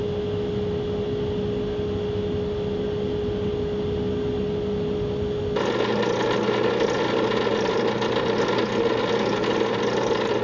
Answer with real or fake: real